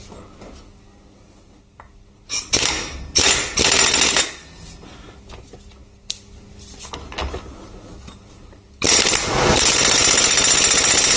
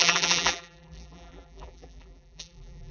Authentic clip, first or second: first